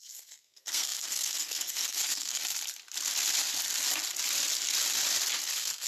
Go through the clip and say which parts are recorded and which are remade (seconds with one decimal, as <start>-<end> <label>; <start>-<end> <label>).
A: 0.0-2.4 remade; 2.4-5.5 recorded; 5.5-5.9 remade